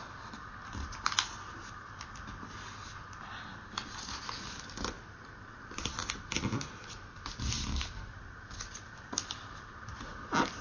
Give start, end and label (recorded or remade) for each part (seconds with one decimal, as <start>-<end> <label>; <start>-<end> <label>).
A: 0.0-10.6 recorded